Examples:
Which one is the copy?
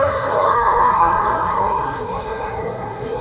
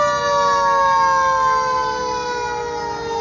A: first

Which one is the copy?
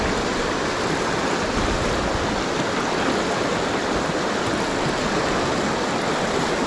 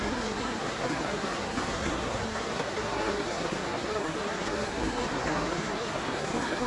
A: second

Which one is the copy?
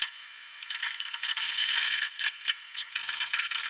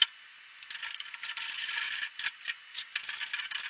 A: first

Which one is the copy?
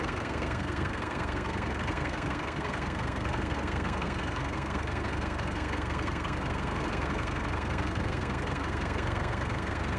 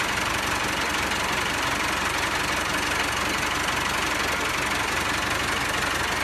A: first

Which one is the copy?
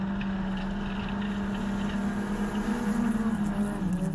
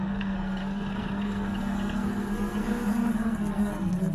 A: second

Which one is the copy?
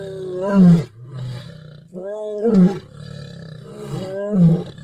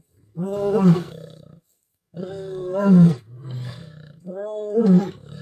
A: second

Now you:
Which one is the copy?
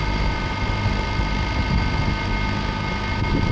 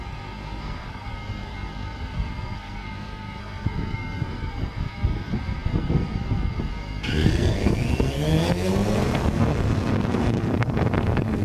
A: second